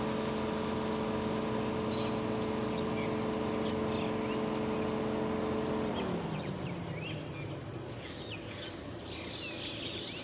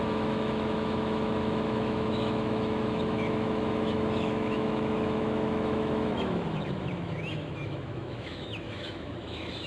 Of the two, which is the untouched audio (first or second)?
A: first